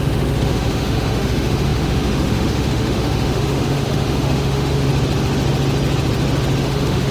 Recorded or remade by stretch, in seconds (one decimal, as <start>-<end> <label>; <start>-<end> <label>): 0.0-4.9 remade; 4.9-6.6 recorded; 6.6-7.1 remade